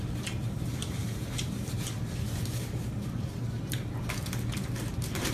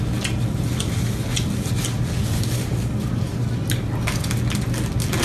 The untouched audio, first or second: second